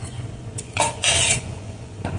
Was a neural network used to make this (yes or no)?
yes